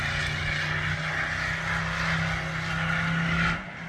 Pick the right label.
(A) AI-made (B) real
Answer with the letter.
B